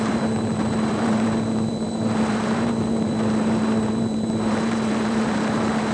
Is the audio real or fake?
fake